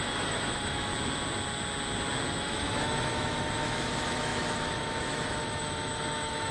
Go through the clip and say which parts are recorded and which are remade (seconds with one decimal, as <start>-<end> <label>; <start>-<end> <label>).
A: 0.0-0.9 remade; 0.9-2.3 recorded; 2.3-6.5 remade